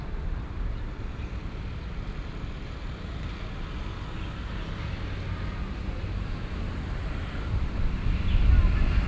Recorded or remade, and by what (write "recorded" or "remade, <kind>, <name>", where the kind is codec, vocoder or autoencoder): recorded